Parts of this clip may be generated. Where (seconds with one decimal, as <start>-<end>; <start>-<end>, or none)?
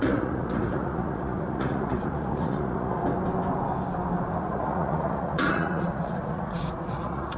0.0-3.0; 4.4-7.4